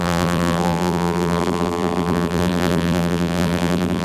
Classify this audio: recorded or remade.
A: remade